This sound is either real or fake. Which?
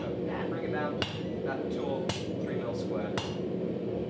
real